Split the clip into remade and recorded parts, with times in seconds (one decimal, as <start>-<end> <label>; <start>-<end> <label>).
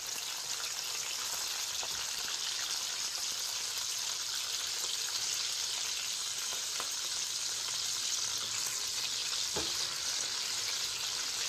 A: 0.0-6.5 recorded; 6.5-7.0 remade; 7.0-11.5 recorded